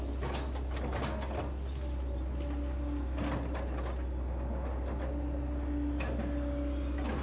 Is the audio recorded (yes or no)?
yes